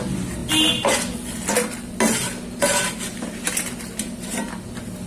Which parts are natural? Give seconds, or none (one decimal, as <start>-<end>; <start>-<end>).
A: 0.0-5.1